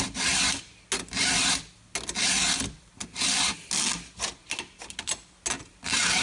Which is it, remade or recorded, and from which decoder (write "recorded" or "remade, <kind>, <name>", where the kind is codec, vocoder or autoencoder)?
recorded